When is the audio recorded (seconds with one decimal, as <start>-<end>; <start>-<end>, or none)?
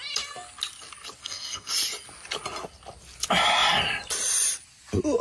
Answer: 0.0-1.2; 1.7-5.2